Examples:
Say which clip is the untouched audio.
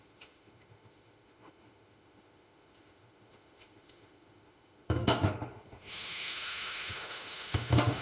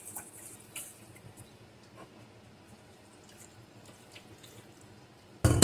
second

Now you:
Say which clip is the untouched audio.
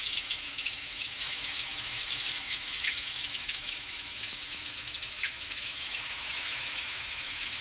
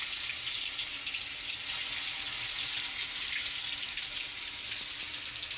second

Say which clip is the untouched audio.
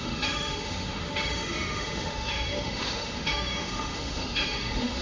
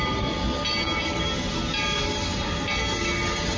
second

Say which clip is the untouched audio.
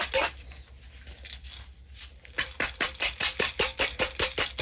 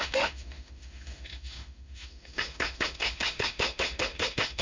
first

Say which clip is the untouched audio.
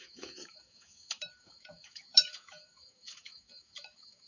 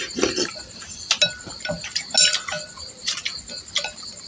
second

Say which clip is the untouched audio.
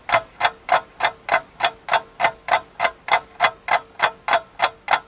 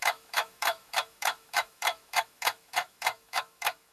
first